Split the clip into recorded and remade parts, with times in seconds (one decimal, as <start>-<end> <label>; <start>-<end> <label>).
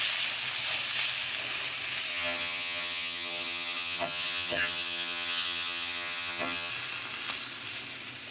0.0-2.1 recorded; 2.1-6.7 remade; 6.7-8.3 recorded